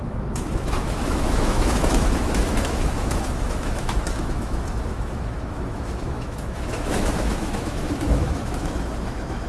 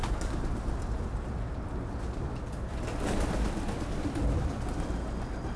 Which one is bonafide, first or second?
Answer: second